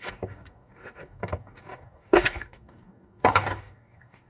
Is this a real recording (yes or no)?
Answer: no